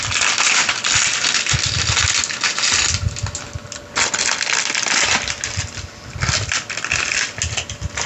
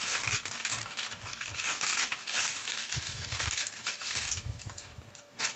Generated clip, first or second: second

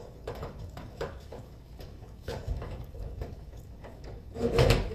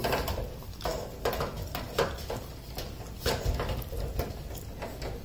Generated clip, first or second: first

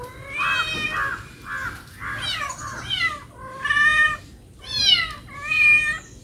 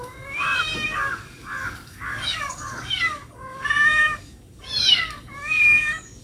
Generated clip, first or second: second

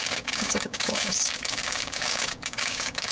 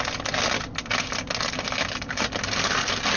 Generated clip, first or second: first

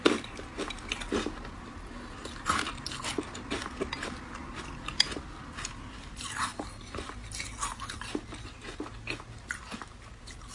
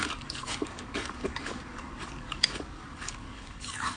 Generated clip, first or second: second